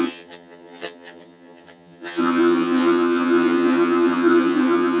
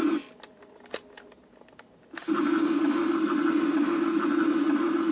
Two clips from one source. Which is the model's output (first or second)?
first